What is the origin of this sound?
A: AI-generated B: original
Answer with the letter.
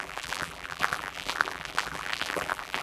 A